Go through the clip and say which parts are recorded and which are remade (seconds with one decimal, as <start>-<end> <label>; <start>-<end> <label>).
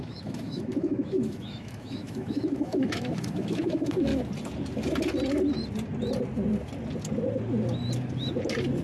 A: 0.0-4.1 remade; 4.1-8.8 recorded